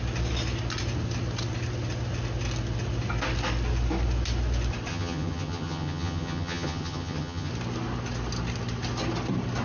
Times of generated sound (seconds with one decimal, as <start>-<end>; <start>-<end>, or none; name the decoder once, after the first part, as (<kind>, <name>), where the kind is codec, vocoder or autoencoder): 4.9-7.5 (vocoder, HiFi-GAN)